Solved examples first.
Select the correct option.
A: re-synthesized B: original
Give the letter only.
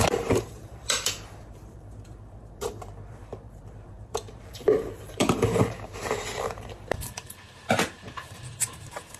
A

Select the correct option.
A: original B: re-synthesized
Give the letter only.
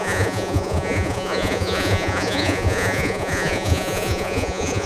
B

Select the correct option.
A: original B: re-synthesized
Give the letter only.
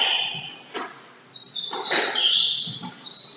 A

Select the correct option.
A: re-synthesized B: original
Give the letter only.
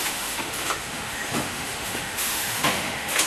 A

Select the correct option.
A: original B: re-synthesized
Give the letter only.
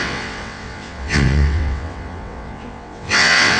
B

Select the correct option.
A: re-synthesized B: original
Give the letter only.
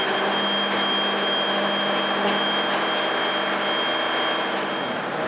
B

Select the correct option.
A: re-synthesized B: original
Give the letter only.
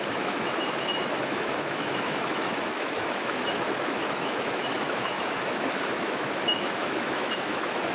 A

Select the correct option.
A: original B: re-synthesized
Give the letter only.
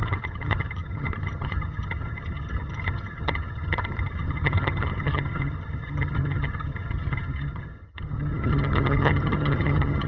B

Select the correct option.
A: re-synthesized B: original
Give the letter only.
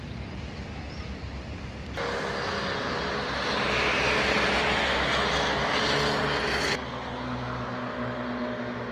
B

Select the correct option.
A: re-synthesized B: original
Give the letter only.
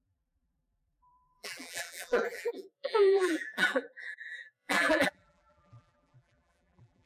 A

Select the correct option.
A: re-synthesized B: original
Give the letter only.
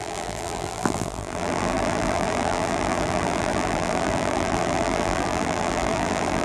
A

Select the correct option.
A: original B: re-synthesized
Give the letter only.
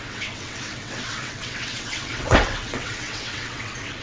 B